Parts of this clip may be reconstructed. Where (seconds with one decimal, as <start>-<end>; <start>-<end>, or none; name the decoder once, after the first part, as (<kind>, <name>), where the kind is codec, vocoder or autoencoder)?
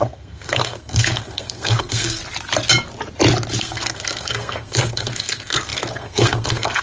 0.0-2.2 (codec, SNAC); 3.6-6.8